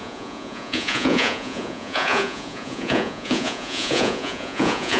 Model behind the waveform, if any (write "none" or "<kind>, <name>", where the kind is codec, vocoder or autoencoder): vocoder, Vocos